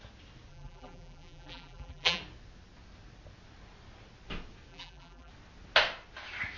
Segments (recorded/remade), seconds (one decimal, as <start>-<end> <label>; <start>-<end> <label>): 0.0-0.5 recorded; 0.5-2.2 remade; 2.2-4.7 recorded; 4.7-5.3 remade; 5.3-6.6 recorded